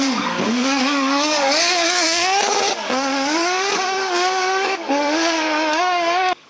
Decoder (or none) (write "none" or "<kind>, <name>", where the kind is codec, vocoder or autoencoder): codec, DAC